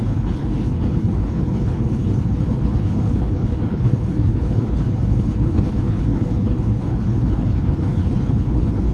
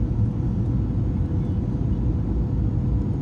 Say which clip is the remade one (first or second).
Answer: first